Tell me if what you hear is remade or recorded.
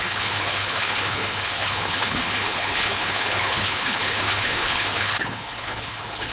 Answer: remade